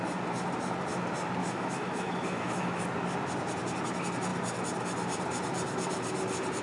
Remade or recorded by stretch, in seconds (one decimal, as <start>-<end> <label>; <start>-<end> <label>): 0.0-1.4 recorded; 1.4-2.8 remade; 2.8-6.6 recorded